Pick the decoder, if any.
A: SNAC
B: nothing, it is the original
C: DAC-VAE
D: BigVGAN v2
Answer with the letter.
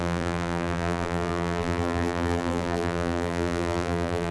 D